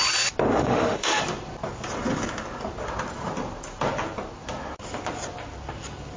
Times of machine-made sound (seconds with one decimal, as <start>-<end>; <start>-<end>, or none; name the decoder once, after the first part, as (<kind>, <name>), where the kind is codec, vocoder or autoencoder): 0.5-1.2 (autoencoder, DAC-VAE)